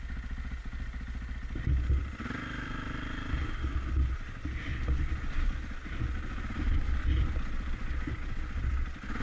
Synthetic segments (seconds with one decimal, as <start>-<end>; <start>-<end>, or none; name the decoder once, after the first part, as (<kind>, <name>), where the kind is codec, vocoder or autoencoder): none